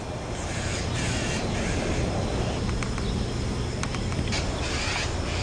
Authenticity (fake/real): real